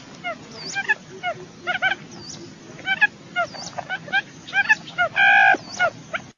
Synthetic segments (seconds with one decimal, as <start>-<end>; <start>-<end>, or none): 2.9-4.1